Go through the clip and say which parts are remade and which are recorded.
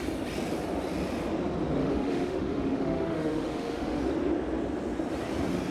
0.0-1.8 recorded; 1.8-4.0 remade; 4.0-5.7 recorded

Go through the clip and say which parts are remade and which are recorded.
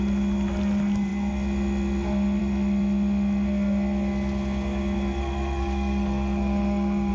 0.0-5.2 recorded; 5.2-7.1 remade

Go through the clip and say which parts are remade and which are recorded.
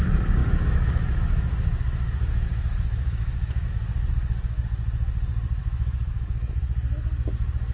0.0-0.4 recorded; 0.4-3.7 remade; 3.7-5.6 recorded; 5.6-6.6 remade; 6.6-7.7 recorded